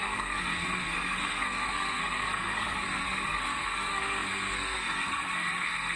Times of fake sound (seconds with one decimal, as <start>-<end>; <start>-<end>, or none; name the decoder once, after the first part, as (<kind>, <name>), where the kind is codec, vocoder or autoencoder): 0.0-6.0 (codec, SNAC)